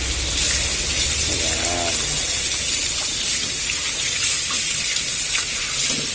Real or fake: real